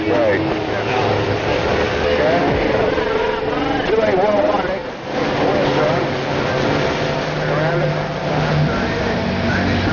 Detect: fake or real real